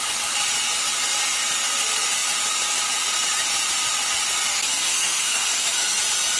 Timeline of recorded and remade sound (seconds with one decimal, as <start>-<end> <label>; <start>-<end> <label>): 0.0-4.5 recorded; 4.5-6.0 remade; 6.0-6.4 recorded